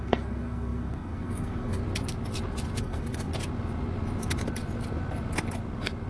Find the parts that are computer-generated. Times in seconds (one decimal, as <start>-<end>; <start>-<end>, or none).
0.0-1.8; 2.8-3.3